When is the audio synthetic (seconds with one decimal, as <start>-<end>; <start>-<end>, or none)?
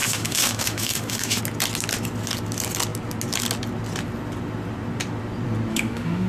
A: 0.0-1.4; 5.7-6.3